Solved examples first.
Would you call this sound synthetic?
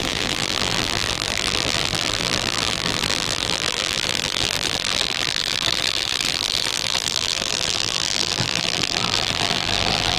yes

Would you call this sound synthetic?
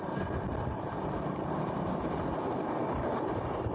no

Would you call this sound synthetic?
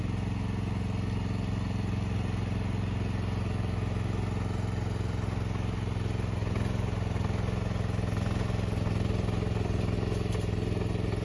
no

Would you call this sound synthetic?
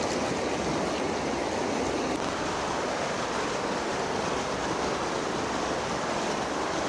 no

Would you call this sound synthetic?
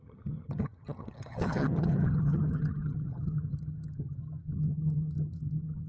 yes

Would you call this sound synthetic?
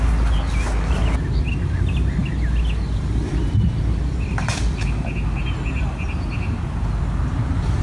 no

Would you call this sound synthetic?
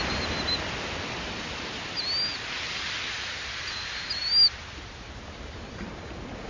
no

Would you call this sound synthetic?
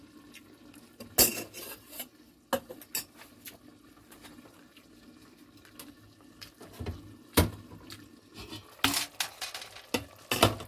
no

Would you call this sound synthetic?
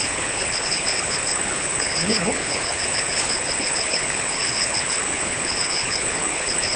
yes